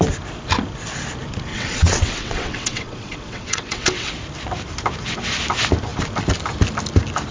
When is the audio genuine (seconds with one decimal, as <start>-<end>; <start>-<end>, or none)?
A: 0.0-1.5; 4.1-7.3